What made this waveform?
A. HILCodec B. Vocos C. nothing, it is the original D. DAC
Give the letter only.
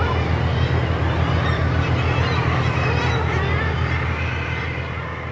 C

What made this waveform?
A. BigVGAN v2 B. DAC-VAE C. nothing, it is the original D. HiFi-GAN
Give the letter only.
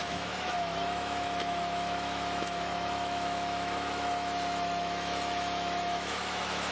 B